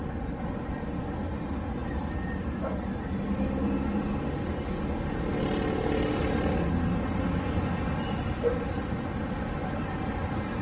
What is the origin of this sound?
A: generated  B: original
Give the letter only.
B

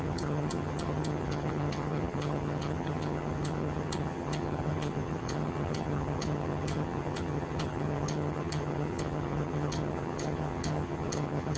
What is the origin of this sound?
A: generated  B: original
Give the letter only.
A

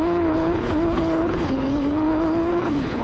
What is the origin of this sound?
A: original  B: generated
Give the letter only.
B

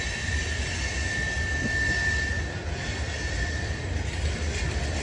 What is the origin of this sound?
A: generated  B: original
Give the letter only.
B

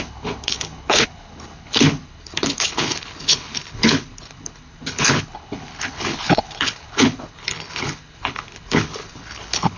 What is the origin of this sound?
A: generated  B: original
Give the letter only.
A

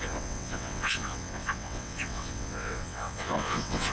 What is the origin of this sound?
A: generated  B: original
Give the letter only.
A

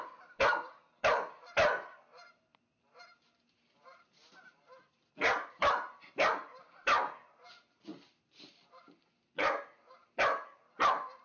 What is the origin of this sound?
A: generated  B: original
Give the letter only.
B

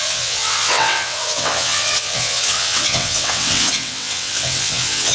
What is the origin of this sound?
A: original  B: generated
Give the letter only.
B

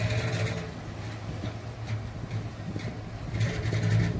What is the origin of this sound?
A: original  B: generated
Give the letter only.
A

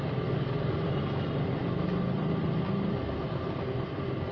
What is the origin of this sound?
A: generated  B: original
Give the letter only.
B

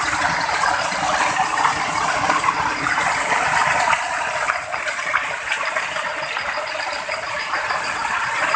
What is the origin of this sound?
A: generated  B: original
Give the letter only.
B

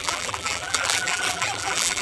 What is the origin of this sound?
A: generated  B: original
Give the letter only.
A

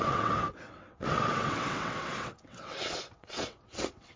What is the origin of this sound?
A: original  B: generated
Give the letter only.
B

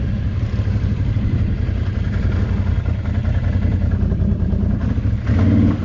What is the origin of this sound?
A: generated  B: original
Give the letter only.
B